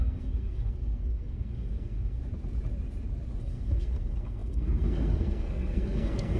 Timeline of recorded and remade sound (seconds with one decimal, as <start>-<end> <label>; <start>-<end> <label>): 0.0-2.2 remade; 2.2-3.4 recorded; 3.4-6.4 remade

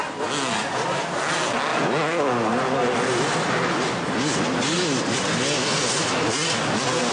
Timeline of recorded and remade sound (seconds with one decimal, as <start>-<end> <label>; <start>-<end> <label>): 0.0-7.1 recorded

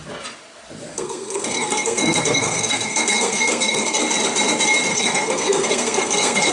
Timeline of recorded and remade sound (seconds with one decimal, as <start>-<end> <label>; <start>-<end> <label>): 0.0-0.9 recorded; 0.9-4.0 remade; 4.0-4.9 recorded; 4.9-6.5 remade

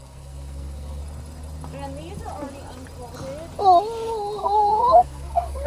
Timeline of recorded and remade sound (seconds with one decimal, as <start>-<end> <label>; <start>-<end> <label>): 0.0-1.0 remade; 1.0-4.4 recorded; 4.4-5.7 remade

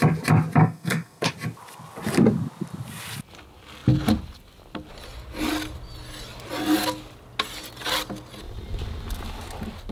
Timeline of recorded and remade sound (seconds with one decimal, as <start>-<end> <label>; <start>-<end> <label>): 0.0-0.6 recorded; 0.6-1.3 remade; 1.3-9.9 recorded

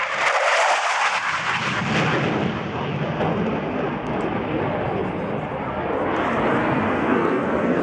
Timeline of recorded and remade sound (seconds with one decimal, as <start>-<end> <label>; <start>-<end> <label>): 0.0-6.6 recorded; 6.6-7.8 remade

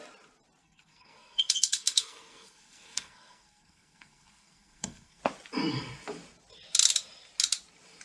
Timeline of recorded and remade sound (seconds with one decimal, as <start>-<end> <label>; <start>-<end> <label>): 0.0-0.6 recorded; 0.6-5.2 remade; 5.2-8.0 recorded